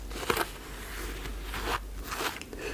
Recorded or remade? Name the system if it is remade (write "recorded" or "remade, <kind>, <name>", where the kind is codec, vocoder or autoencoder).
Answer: recorded